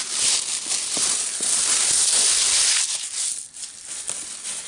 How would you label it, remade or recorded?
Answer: recorded